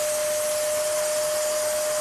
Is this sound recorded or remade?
recorded